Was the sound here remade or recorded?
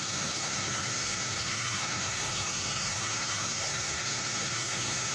remade